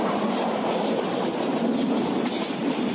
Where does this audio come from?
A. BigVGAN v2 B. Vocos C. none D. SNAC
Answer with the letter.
C